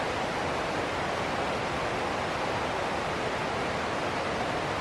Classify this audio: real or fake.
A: real